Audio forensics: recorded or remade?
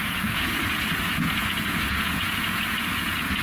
remade